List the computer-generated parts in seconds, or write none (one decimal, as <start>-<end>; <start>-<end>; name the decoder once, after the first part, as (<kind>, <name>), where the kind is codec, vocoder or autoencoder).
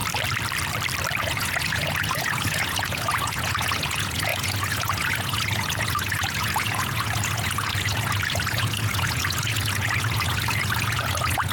1.2-11.5 (vocoder, Vocos)